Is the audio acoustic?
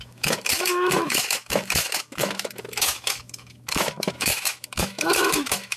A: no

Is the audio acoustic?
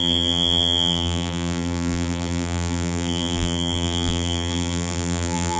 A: no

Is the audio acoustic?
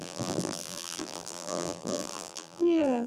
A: no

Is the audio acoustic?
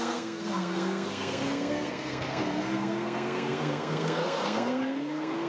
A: no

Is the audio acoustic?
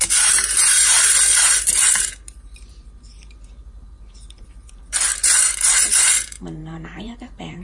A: no